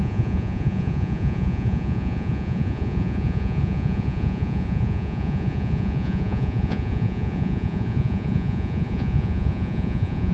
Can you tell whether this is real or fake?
fake